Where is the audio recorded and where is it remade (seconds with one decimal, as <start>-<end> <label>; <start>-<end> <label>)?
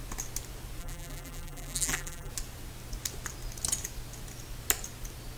0.0-0.8 recorded; 0.8-2.3 remade; 2.3-5.4 recorded